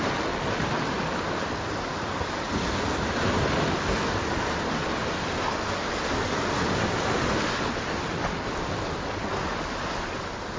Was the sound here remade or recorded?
recorded